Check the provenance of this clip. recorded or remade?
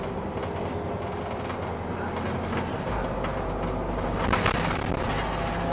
recorded